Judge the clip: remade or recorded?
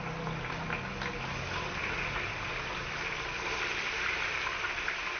recorded